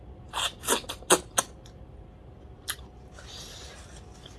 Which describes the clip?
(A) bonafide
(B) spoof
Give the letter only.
A